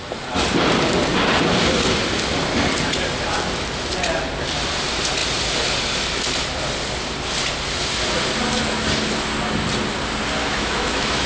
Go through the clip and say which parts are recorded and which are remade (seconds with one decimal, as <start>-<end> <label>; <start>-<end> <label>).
0.0-10.4 recorded; 10.4-11.3 remade